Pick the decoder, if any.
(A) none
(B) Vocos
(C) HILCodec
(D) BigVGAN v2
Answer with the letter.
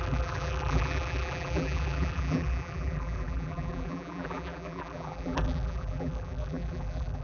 D